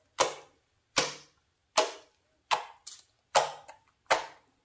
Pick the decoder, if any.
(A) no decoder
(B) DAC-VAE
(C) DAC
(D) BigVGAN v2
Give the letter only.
A